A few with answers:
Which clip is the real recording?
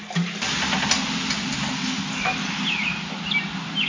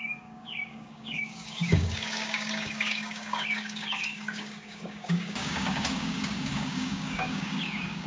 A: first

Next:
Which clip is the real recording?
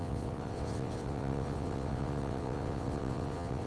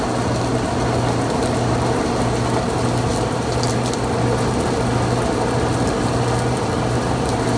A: second